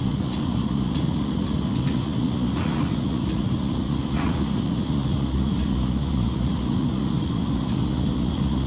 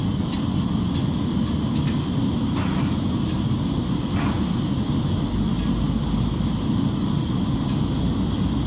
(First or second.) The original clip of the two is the second